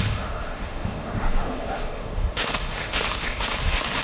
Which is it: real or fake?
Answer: fake